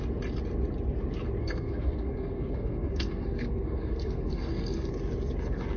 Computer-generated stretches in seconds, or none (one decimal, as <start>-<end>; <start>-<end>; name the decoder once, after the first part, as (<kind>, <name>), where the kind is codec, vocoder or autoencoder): 1.4-4.9 (codec, SNAC)